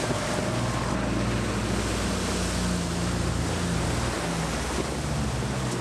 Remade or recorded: recorded